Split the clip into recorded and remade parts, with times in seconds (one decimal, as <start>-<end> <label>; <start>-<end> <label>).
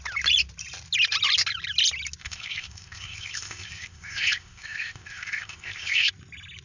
0.0-2.2 recorded; 2.2-6.1 remade; 6.1-6.6 recorded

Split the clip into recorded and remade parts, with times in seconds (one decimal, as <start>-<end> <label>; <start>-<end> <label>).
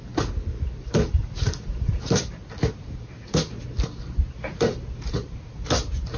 0.0-6.2 recorded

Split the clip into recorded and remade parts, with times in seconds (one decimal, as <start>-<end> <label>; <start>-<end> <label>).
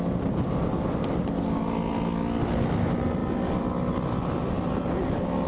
0.0-5.5 recorded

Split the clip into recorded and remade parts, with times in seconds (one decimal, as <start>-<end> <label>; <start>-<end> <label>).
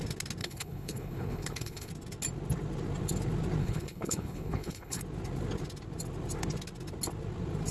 0.0-0.4 recorded; 0.4-1.9 remade; 1.9-3.6 recorded; 3.6-5.0 remade; 5.0-7.7 recorded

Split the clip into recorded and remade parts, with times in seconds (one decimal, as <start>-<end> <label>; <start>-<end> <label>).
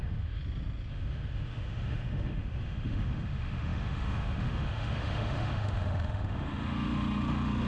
0.0-0.4 remade; 0.4-0.9 recorded; 0.9-7.7 remade